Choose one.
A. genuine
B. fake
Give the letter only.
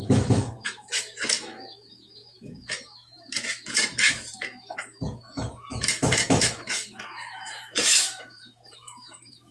B